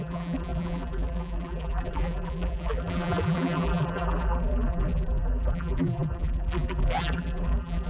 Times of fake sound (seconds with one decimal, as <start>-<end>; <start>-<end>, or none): 0.0-7.9